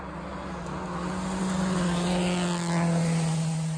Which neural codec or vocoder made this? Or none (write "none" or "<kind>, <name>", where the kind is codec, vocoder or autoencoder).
none